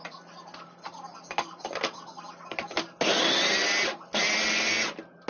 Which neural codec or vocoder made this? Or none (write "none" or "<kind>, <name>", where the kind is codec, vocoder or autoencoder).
none